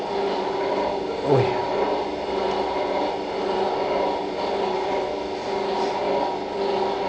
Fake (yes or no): no